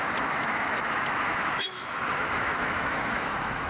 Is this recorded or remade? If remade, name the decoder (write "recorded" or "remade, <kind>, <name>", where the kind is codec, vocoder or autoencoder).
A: remade, autoencoder, DAC-VAE